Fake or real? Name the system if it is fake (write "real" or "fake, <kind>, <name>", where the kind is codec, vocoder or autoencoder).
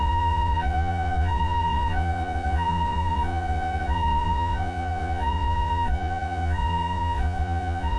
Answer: fake, vocoder, Vocos